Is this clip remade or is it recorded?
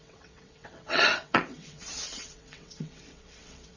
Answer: remade